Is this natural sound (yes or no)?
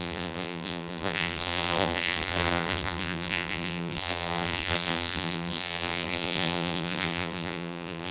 no